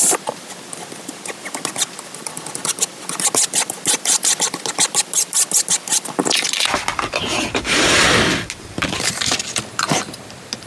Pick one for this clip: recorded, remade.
recorded